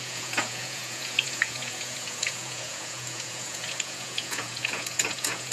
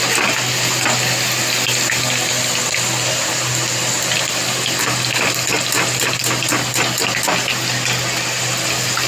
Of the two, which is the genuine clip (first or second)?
second